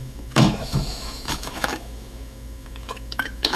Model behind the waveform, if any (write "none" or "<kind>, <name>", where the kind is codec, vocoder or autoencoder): autoencoder, DAC-VAE